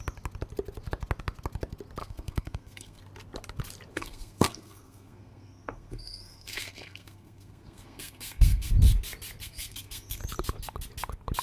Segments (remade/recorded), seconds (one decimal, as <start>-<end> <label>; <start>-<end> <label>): 0.0-2.0 recorded; 2.0-3.0 remade; 3.0-3.9 recorded; 3.9-8.7 remade; 8.7-9.4 recorded; 9.4-10.2 remade; 10.2-11.4 recorded